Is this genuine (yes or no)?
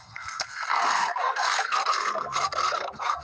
no